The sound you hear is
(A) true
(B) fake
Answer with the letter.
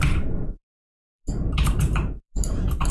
B